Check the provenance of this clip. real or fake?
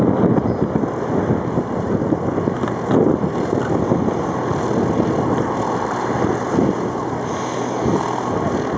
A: real